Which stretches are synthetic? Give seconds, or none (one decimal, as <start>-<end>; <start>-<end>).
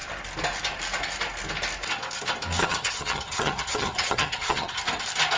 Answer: 2.6-4.8